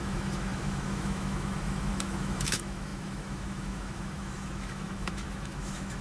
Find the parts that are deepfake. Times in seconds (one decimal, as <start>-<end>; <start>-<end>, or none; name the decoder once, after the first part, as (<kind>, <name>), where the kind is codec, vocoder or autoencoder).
0.0-6.0 (autoencoder, DAC-VAE)